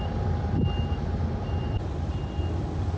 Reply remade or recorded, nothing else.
recorded